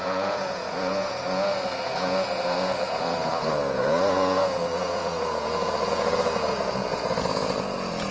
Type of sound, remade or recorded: remade